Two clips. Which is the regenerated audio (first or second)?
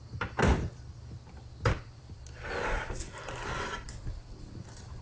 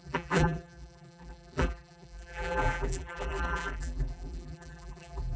second